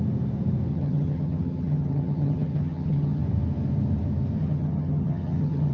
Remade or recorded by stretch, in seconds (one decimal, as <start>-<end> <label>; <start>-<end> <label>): 0.0-0.7 recorded; 0.7-3.2 remade; 3.2-4.4 recorded; 4.4-5.7 remade